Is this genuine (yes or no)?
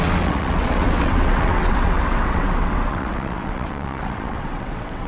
no